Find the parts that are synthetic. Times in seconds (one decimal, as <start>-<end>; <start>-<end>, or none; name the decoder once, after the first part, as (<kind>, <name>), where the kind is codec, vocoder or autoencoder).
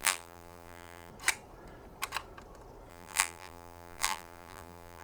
0.0-1.1 (vocoder, BigVGAN v2); 2.9-5.0